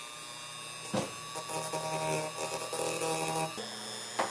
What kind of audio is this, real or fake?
real